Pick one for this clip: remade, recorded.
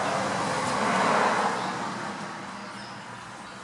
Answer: recorded